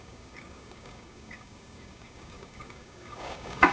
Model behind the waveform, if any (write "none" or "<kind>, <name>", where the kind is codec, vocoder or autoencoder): codec, DAC